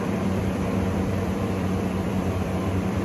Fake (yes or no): yes